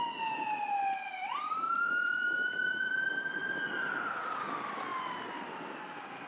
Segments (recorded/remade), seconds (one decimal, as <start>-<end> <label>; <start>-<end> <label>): 0.0-6.3 recorded